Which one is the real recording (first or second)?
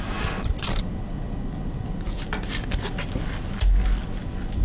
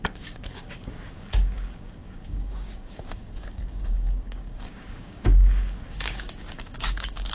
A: first